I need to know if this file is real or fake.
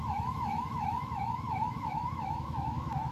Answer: fake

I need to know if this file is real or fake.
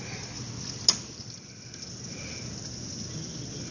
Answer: real